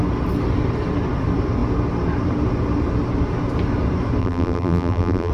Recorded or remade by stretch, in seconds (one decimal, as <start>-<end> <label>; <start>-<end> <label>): 0.0-4.2 recorded; 4.2-5.3 remade